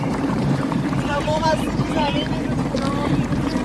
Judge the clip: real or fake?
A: fake